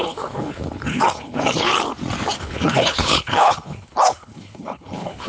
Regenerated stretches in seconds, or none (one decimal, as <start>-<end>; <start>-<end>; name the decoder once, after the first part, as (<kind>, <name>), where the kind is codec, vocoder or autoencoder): 0.0-1.7 (codec, HILCodec); 2.4-5.3

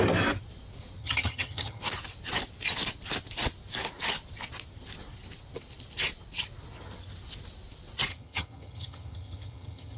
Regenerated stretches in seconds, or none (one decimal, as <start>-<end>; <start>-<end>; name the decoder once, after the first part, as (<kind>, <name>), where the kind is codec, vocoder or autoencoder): 1.0-1.8 (vocoder, HiFi-GAN); 8.1-10.0

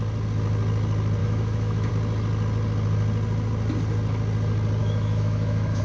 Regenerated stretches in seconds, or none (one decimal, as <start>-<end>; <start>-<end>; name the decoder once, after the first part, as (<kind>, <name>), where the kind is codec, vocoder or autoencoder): 1.2-1.9 (autoencoder, DAC-VAE); 4.8-5.8

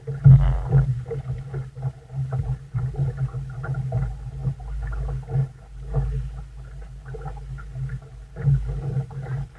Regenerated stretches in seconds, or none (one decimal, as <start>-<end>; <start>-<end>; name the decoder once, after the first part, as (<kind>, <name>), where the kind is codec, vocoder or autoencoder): none

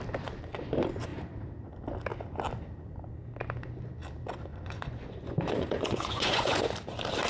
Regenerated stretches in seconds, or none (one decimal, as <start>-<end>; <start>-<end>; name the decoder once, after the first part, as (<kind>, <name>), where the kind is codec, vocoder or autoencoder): 4.5-6.7 (vocoder, Vocos)

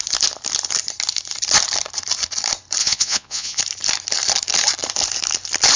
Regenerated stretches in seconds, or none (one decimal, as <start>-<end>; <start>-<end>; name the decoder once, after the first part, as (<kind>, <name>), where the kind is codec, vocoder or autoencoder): 2.8-3.6 (vocoder, Vocos)